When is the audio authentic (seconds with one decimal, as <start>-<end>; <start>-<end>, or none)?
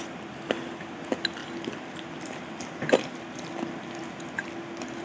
0.0-5.0